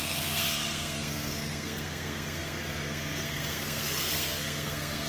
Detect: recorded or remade remade